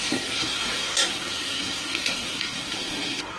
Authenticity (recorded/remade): remade